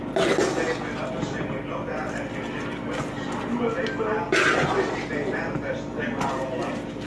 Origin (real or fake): real